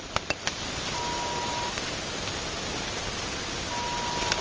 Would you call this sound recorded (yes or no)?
yes